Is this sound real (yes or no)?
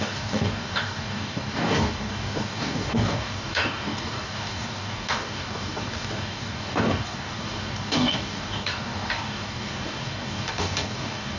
no